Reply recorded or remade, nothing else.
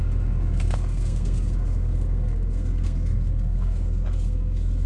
remade